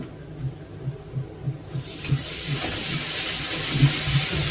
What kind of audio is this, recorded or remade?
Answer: recorded